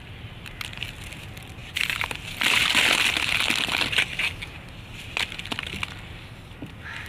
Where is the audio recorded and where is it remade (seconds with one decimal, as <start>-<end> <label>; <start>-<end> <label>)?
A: 0.0-1.6 recorded; 1.6-2.2 remade; 2.2-7.1 recorded

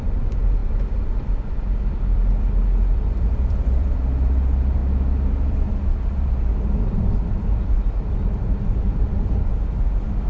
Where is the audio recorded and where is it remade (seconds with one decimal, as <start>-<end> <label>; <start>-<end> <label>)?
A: 0.0-4.8 remade; 4.8-5.4 recorded; 5.4-10.3 remade

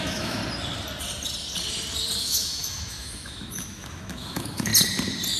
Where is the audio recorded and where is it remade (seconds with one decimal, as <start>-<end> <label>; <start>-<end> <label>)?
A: 0.0-0.4 remade; 0.4-2.2 recorded; 2.2-4.7 remade; 4.7-5.4 recorded

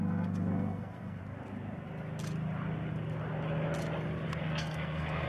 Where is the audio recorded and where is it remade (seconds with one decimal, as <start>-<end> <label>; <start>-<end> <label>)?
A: 0.0-1.2 remade; 1.2-4.4 recorded; 4.4-5.3 remade